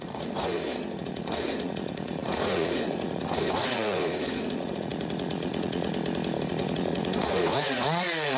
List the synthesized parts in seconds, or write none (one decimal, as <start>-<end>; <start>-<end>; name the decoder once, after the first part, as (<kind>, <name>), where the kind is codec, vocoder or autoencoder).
0.0-5.9 (vocoder, Vocos); 6.5-8.4